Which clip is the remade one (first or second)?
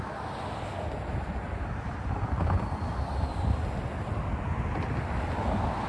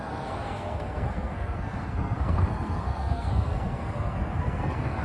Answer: second